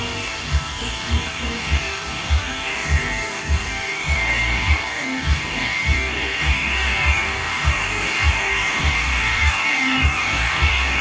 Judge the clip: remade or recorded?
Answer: remade